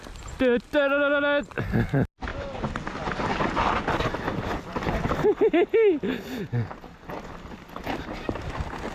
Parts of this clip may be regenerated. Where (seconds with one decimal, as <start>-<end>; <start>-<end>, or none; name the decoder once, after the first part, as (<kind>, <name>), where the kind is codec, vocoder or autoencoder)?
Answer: none